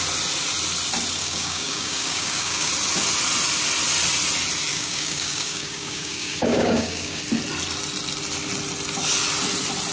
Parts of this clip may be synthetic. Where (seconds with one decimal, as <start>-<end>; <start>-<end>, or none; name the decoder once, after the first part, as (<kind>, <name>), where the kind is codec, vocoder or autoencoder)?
1.2-2.7 (codec, DAC); 4.7-7.2